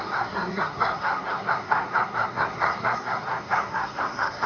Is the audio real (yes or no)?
no